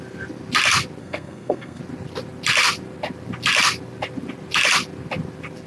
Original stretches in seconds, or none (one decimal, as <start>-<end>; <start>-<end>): 0.0-1.0; 1.8-5.7